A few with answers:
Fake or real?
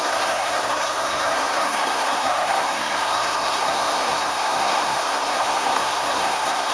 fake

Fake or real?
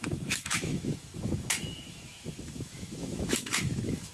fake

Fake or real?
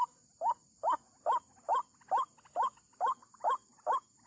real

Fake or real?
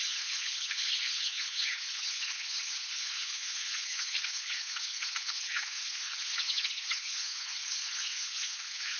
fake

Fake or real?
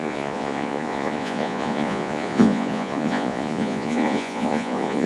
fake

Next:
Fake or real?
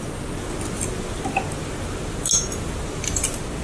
real